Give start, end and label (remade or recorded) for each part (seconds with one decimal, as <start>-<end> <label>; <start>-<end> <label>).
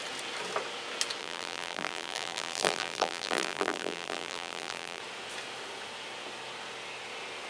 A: 0.0-1.2 recorded; 1.2-5.0 remade; 5.0-7.5 recorded